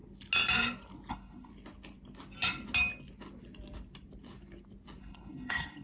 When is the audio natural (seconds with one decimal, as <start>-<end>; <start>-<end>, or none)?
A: 0.0-1.1; 1.5-5.0